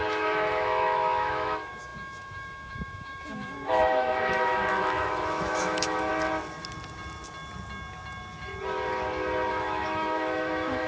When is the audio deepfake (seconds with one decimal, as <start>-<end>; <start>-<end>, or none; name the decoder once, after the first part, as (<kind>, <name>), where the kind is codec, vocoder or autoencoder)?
0.0-6.1 (autoencoder, DAC-VAE); 9.5-10.9